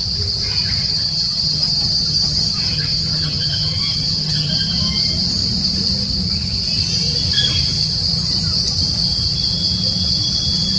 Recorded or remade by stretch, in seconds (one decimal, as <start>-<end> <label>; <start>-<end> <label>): 0.0-0.8 recorded; 0.8-4.5 remade; 4.5-10.8 recorded